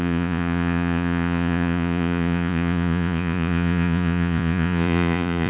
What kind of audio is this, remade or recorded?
remade